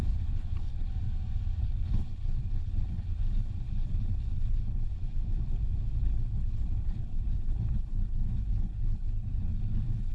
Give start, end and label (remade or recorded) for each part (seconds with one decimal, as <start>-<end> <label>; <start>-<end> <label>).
0.0-0.9 remade; 0.9-1.6 recorded; 1.6-4.9 remade; 4.9-6.0 recorded; 6.0-10.1 remade